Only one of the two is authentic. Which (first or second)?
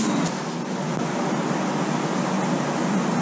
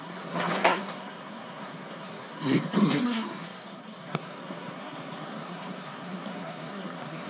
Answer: first